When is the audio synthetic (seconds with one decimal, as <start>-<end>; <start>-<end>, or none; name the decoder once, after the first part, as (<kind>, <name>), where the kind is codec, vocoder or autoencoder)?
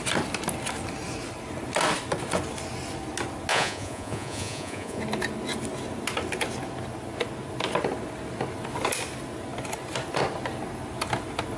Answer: 3.5-5.0 (vocoder, Vocos)